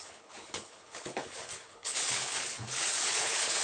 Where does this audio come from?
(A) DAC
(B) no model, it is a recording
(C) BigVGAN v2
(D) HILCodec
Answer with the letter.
D